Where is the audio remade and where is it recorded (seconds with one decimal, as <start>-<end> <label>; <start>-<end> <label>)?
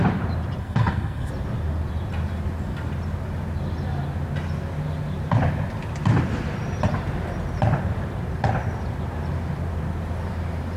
0.0-0.6 recorded; 0.6-1.3 remade; 1.3-10.8 recorded